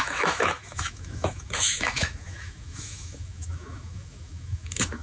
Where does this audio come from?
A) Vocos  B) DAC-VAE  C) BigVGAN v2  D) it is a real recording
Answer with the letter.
B